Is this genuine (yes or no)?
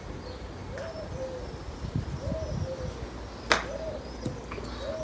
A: yes